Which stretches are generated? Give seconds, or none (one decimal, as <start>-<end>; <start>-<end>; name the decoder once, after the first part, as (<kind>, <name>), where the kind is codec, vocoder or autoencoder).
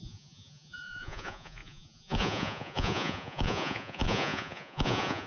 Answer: 0.0-5.3 (vocoder, Vocos)